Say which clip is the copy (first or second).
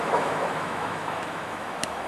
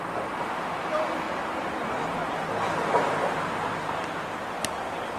first